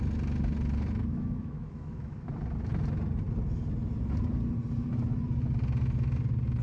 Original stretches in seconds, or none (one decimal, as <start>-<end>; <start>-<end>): 0.0-1.1; 2.3-6.6